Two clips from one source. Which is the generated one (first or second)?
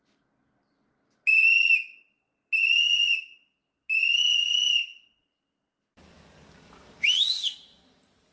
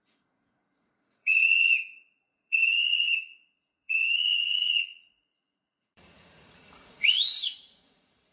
second